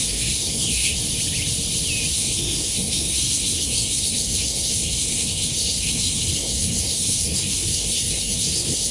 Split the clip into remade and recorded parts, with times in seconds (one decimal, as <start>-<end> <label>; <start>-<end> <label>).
0.0-1.0 remade; 1.0-2.1 recorded; 2.1-8.9 remade

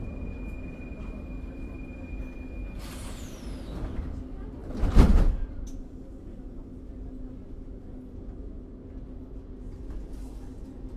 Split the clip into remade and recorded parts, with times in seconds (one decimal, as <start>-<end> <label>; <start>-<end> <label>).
0.0-11.0 recorded

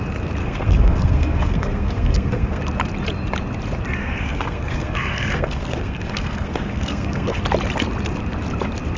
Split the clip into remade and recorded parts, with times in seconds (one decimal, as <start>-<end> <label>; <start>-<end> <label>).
0.0-0.4 recorded; 0.4-2.6 remade; 2.6-4.0 recorded; 4.0-7.4 remade; 7.4-9.0 recorded

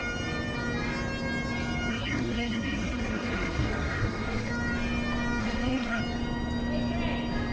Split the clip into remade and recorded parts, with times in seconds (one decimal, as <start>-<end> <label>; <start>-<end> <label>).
0.0-1.9 recorded; 1.9-4.5 remade; 4.5-5.4 recorded; 5.4-6.0 remade; 6.0-7.5 recorded

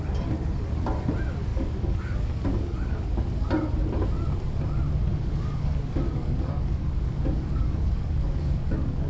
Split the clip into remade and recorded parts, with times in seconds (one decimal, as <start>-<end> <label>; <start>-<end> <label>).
0.0-1.5 recorded; 1.5-3.2 remade; 3.2-5.1 recorded; 5.1-9.1 remade

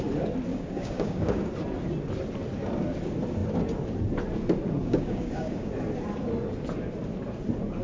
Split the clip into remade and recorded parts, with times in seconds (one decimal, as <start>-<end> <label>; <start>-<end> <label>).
0.0-0.5 recorded; 0.5-1.5 remade; 1.5-4.8 recorded; 4.8-5.7 remade; 5.7-7.8 recorded